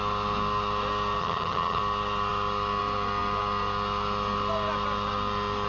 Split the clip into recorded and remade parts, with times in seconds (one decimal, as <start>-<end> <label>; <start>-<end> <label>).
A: 0.0-1.2 recorded; 1.2-1.8 remade; 1.8-5.7 recorded